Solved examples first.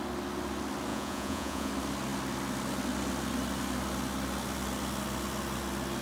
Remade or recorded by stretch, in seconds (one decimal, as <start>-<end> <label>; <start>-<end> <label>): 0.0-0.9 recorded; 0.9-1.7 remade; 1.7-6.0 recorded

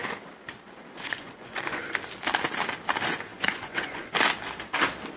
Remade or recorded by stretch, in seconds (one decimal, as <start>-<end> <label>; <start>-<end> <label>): 0.0-0.9 recorded; 0.9-1.8 remade; 1.8-3.3 recorded; 3.3-4.1 remade; 4.1-5.2 recorded

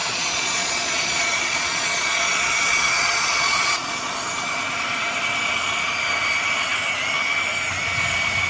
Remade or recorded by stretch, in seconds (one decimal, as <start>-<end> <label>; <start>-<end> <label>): 0.0-4.1 remade; 4.1-8.5 recorded

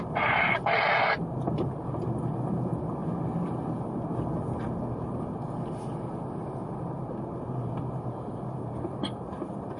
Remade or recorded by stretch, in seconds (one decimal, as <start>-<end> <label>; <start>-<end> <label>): 0.0-9.8 recorded

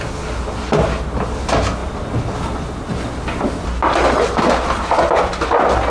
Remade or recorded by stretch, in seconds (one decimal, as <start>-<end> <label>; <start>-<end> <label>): 0.0-5.9 recorded

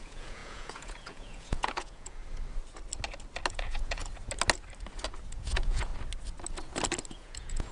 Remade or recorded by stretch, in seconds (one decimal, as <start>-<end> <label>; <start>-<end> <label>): 0.0-2.2 remade; 2.2-3.5 recorded; 3.5-4.0 remade; 4.0-5.3 recorded; 5.3-5.9 remade; 5.9-7.1 recorded; 7.1-7.7 remade